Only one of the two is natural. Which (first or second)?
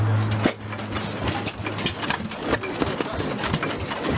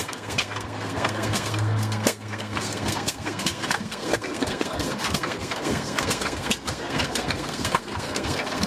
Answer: first